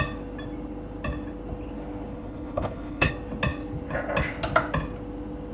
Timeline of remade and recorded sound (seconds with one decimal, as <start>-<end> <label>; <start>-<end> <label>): 0.0-2.1 recorded; 2.1-3.1 remade; 3.1-5.5 recorded